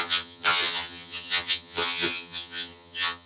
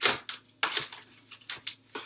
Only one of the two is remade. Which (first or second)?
first